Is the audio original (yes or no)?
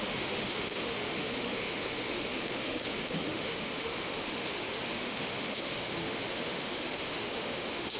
no